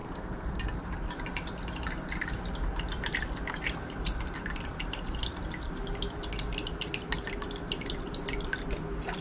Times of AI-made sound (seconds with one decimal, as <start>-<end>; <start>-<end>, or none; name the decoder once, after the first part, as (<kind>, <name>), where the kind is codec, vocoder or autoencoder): 0.0-0.6 (codec, SNAC)

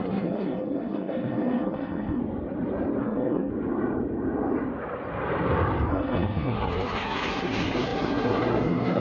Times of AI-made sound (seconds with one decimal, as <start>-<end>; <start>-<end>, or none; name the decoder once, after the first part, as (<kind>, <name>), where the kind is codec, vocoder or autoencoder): 0.0-2.2 (codec, SNAC); 3.0-3.5; 5.9-9.0

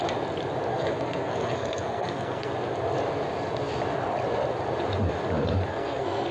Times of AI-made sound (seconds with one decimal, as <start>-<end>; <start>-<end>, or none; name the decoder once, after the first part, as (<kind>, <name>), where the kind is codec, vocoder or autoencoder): 0.7-2.5 (codec, SNAC); 5.7-6.3

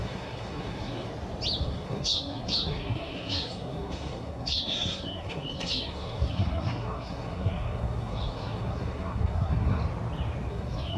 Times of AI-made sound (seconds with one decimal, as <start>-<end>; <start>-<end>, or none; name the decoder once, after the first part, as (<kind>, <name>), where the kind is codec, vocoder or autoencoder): 0.0-1.1 (codec, SNAC); 1.6-9.8; 10.5-11.0